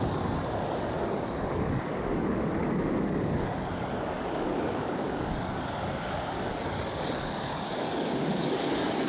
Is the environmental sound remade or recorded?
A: remade